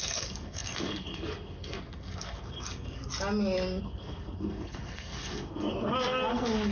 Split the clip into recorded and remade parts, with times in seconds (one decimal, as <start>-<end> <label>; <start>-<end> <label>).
0.0-3.0 remade; 3.0-3.8 recorded; 3.8-6.7 remade